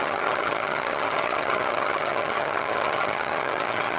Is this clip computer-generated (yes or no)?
yes